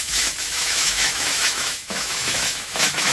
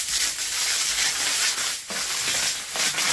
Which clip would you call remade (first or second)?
first